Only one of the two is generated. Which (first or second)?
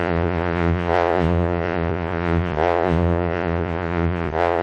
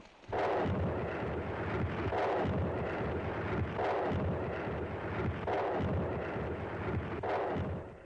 first